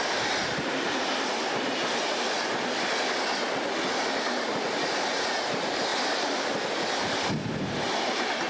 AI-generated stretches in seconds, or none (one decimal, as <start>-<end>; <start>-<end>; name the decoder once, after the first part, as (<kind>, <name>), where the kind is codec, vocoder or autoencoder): none